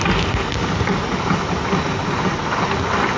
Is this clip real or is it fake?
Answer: real